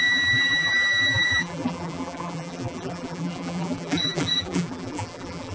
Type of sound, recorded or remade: remade